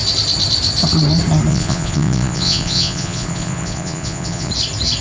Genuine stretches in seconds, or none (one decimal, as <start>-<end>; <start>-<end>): 0.0-1.5; 4.5-5.0